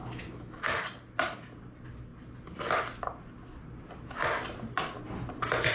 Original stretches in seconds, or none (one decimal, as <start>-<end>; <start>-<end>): 0.8-5.7